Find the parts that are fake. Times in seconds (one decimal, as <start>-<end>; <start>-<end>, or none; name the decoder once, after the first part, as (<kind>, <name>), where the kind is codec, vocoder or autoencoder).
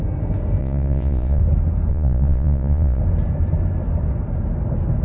0.6-1.4 (vocoder, Vocos); 1.9-3.0